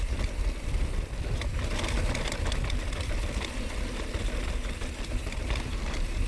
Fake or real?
real